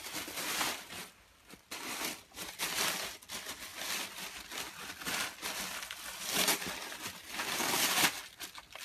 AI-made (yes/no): no